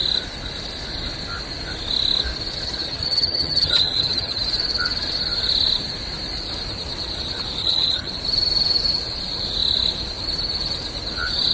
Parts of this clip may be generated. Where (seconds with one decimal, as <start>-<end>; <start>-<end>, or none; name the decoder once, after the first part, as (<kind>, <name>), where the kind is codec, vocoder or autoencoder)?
2.8-4.4 (vocoder, HiFi-GAN); 7.6-8.1

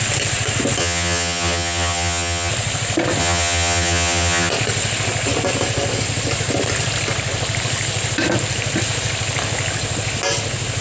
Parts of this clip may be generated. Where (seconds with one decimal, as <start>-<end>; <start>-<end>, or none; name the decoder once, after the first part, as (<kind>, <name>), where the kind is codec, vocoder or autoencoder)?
0.8-2.5 (vocoder, HiFi-GAN); 3.2-4.5

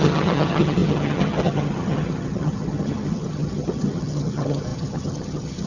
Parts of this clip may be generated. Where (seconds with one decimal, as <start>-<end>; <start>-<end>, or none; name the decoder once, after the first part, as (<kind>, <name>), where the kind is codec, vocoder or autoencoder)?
0.0-5.7 (vocoder, HiFi-GAN)

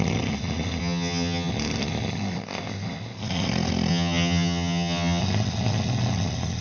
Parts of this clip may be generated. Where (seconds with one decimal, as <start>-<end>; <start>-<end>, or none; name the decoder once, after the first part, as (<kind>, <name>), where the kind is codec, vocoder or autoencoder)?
0.8-1.5 (vocoder, HiFi-GAN); 3.9-5.2

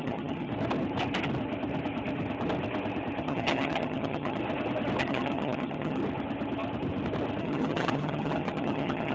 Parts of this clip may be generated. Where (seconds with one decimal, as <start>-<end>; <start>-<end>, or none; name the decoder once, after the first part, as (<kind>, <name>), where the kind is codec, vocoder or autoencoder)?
0.0-0.5 (vocoder, HiFi-GAN); 3.2-4.4; 5.0-6.0; 7.4-9.1

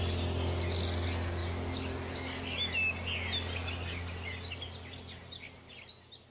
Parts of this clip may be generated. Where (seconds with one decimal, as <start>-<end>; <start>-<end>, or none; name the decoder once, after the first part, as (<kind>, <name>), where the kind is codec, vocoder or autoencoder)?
none

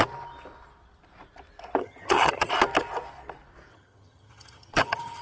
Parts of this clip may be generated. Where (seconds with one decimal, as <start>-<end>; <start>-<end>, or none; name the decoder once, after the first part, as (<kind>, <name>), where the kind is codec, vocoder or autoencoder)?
1.8-2.5 (vocoder, HiFi-GAN); 3.7-5.2

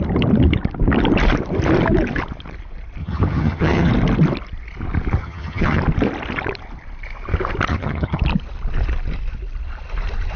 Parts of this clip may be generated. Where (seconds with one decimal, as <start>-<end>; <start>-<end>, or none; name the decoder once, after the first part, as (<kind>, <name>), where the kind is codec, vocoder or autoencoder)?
3.0-3.9 (vocoder, HiFi-GAN); 5.2-5.8; 7.7-8.2